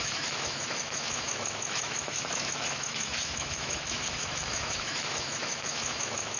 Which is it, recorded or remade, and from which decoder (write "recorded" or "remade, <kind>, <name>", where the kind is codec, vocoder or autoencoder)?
remade, autoencoder, DAC-VAE